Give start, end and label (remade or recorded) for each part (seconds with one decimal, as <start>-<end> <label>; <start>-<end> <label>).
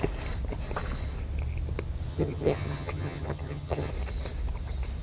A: 0.0-2.1 recorded; 2.1-3.9 remade; 3.9-5.0 recorded